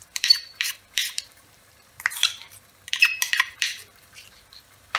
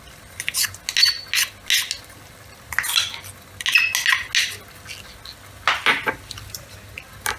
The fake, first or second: first